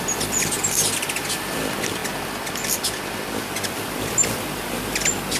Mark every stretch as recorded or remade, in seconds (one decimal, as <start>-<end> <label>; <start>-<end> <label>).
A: 0.0-5.4 recorded